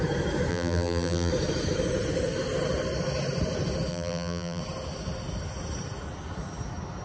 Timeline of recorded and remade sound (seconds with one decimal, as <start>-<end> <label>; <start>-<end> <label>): 0.0-0.5 recorded; 0.5-1.3 remade; 1.3-3.9 recorded; 3.9-4.6 remade; 4.6-7.0 recorded